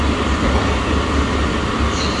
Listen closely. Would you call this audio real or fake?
real